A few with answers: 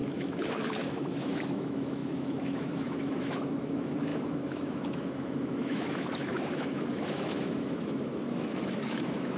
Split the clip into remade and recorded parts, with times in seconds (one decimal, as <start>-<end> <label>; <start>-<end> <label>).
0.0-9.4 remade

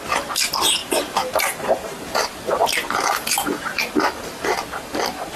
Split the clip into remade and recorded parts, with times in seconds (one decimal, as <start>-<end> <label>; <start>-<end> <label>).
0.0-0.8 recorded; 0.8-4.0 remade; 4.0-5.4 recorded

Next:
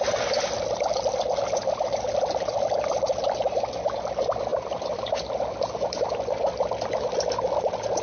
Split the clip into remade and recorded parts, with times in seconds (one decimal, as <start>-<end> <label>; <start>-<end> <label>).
0.0-1.6 recorded; 1.6-3.2 remade; 3.2-4.5 recorded; 4.5-6.1 remade; 6.1-8.0 recorded

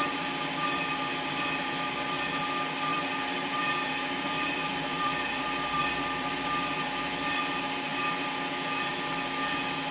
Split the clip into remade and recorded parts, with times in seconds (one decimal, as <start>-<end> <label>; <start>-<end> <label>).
0.0-2.9 recorded; 2.9-7.4 remade; 7.4-9.9 recorded

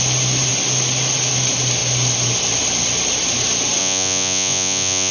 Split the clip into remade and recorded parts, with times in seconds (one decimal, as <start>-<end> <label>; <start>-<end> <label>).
0.0-3.8 recorded; 3.8-5.1 remade